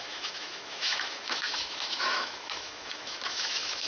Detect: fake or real fake